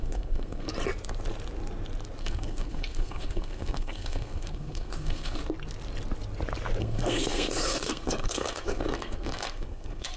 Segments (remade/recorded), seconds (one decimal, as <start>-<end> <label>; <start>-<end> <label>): 0.0-0.7 remade; 0.7-2.2 recorded; 2.2-5.4 remade; 5.4-6.8 recorded; 6.8-10.2 remade